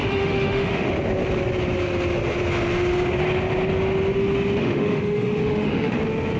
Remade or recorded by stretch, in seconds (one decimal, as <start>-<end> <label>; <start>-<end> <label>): 0.0-0.9 remade; 0.9-4.6 recorded; 4.6-6.0 remade; 6.0-6.4 recorded